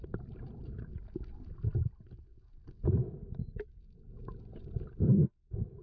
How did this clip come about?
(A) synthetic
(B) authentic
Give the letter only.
B